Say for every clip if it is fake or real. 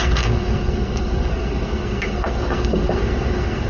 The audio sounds fake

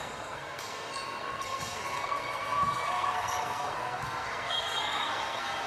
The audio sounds fake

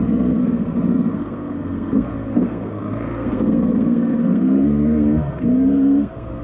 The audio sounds fake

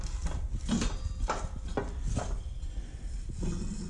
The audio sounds real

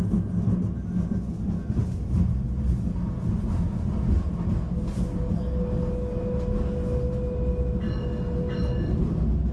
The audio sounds real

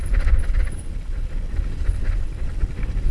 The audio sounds real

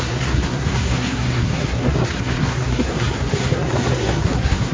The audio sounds fake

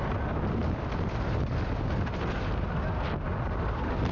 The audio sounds real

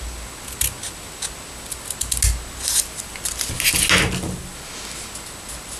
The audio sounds real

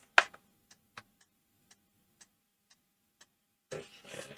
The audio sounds real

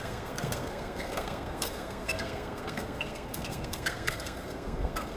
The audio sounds fake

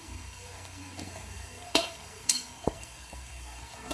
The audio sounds fake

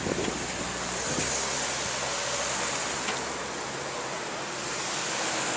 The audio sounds real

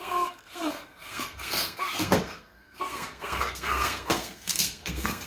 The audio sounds fake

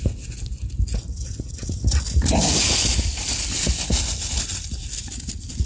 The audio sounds real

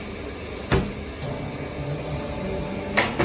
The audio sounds real